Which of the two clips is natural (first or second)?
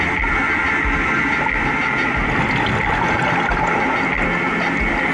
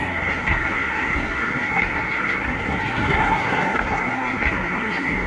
first